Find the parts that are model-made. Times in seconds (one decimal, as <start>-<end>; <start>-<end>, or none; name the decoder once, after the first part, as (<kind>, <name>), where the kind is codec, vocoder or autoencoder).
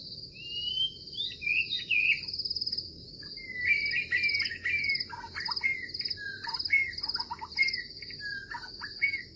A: none